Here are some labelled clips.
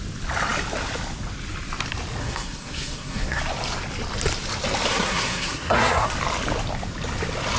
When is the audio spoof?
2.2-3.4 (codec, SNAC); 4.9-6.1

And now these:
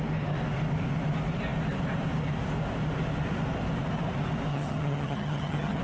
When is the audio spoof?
4.5-5.8 (vocoder, HiFi-GAN)

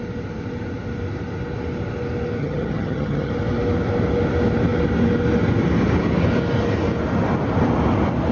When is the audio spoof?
2.4-3.3 (vocoder, HiFi-GAN)

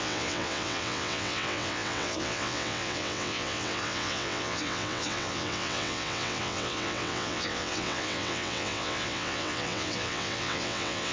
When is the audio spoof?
0.0-11.1 (vocoder, WaveNeXt)

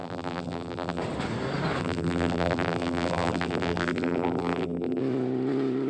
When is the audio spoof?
0.0-1.0 (vocoder, BigVGAN v2); 1.8-5.0